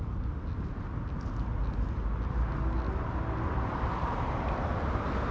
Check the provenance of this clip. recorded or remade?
recorded